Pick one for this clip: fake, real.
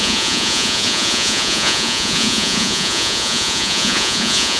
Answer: fake